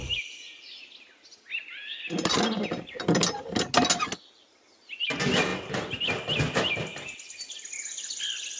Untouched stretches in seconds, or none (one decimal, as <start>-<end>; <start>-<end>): 0.0-8.6